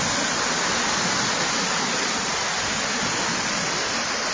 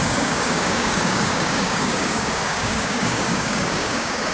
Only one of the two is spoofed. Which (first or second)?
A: second